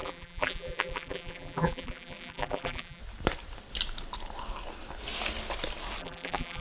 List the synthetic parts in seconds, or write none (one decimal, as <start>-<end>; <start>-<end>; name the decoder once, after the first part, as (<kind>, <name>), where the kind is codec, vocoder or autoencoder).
0.0-3.0 (vocoder, BigVGAN v2); 6.0-6.6